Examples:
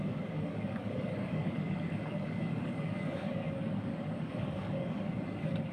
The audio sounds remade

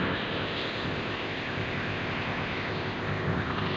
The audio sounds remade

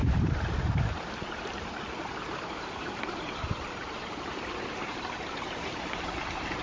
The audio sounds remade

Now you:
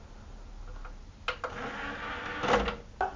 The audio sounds recorded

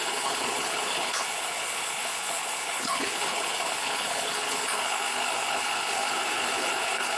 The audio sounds remade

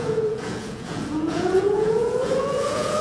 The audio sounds remade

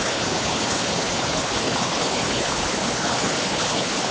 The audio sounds remade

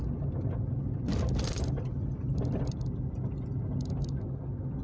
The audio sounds recorded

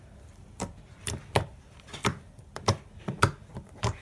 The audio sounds recorded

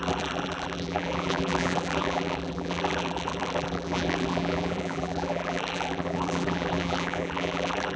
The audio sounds remade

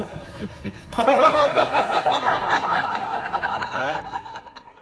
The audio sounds remade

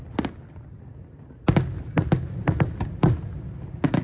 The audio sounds recorded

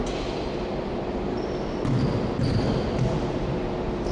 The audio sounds recorded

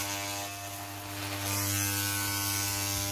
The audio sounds recorded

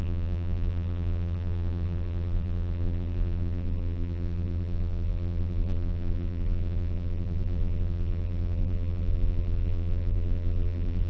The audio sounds remade